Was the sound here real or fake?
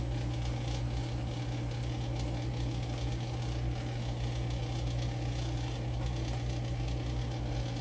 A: real